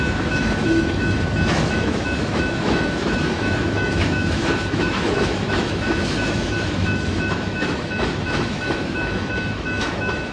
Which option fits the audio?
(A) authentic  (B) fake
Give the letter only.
B